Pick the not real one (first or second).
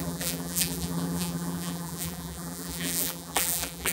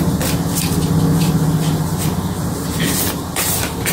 first